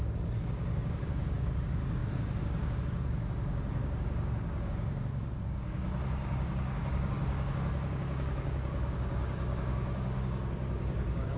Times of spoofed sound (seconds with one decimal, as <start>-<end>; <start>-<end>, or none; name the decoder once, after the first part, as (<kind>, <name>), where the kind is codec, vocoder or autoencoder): 0.0-11.4 (codec, DAC)